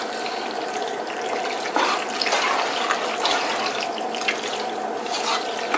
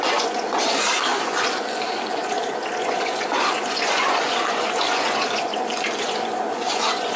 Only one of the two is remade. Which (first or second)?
second